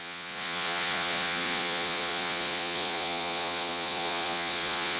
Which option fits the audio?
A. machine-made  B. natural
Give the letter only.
A